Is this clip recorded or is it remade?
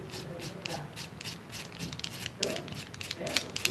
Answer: recorded